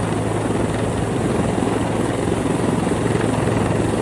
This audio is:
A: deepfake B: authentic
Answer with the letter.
B